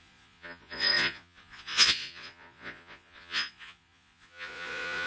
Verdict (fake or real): fake